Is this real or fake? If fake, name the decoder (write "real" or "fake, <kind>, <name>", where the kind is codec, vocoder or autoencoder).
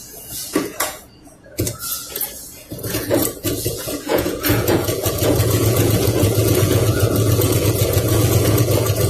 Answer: fake, vocoder, Vocos